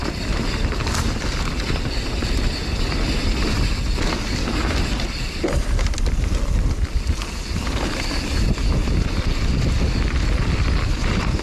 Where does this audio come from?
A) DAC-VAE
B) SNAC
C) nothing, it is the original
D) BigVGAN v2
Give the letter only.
C